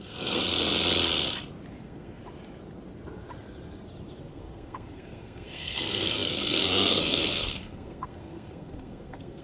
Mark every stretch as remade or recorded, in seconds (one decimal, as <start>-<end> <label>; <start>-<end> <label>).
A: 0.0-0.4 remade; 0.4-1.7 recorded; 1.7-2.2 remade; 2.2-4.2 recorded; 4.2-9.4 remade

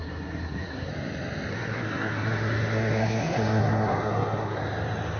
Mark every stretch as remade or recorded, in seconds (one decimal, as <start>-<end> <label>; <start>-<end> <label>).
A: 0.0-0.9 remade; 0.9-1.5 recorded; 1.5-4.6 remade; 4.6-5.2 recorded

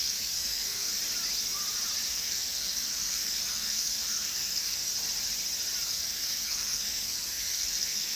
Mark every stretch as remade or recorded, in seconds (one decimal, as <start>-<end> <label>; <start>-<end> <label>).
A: 0.0-1.0 remade; 1.0-2.1 recorded; 2.1-4.9 remade; 4.9-5.9 recorded; 5.9-8.2 remade

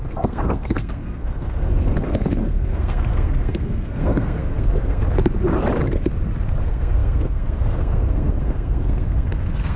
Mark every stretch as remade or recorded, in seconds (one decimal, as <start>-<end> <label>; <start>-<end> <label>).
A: 0.0-5.0 remade; 5.0-6.6 recorded; 6.6-9.8 remade

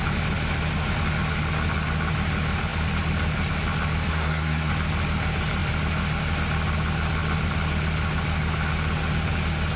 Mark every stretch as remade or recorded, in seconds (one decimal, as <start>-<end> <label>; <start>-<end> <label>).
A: 0.0-4.1 recorded; 4.1-4.7 remade; 4.7-9.8 recorded

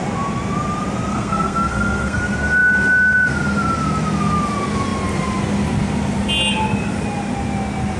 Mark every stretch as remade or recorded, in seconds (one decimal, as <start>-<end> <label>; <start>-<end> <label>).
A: 0.0-1.1 recorded; 1.1-2.2 remade; 2.2-8.0 recorded

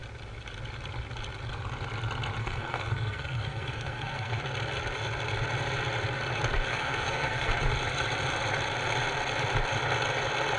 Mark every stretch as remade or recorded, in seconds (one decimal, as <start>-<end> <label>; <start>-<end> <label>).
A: 0.0-2.4 recorded; 2.4-4.4 remade; 4.4-6.7 recorded; 6.7-7.5 remade; 7.5-10.6 recorded